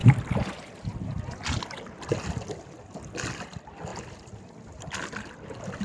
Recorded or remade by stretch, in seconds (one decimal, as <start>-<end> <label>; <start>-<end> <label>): 0.0-5.8 recorded